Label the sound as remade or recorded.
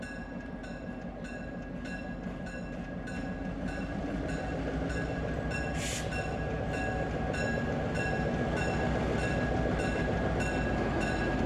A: recorded